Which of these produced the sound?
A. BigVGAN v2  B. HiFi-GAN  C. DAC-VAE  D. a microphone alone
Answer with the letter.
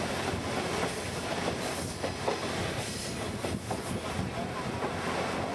D